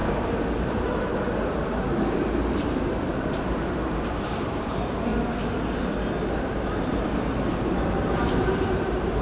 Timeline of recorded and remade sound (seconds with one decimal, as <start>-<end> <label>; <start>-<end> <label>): 0.0-1.0 recorded; 1.0-5.1 remade; 5.1-6.3 recorded; 6.3-9.2 remade